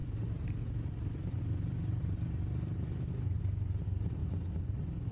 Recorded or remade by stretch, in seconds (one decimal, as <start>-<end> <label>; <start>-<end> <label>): 0.0-3.1 remade; 3.1-4.2 recorded; 4.2-5.1 remade